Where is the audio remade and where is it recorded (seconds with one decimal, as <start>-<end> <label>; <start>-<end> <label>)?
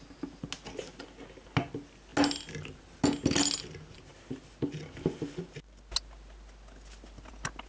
0.0-7.7 recorded